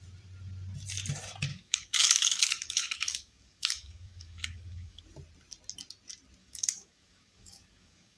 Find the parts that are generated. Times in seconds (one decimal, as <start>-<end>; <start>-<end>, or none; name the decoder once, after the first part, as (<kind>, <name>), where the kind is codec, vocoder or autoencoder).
1.5-5.0 (codec, DAC); 6.4-8.2